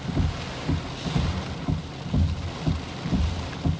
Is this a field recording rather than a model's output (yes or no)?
yes